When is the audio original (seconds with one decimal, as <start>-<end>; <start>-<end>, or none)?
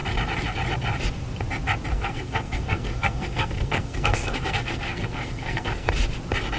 0.0-1.9; 5.9-6.6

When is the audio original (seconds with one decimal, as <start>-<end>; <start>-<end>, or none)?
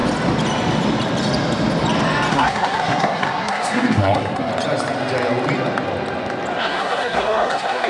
0.0-2.3; 4.5-6.6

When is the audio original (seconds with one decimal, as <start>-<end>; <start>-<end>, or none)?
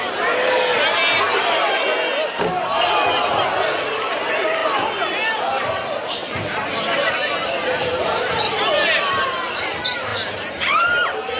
0.0-11.4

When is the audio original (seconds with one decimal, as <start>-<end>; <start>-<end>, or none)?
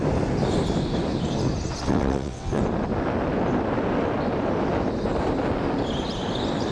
0.0-1.8; 2.6-6.7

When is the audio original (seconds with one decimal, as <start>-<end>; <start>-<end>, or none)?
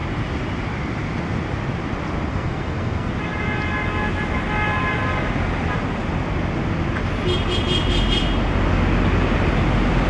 0.0-2.3; 3.1-10.1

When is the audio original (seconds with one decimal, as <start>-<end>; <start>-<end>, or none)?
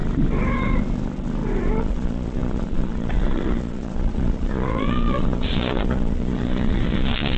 0.0-1.8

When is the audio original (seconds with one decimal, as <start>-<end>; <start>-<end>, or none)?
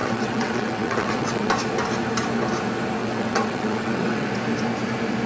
1.5-3.0; 4.3-5.3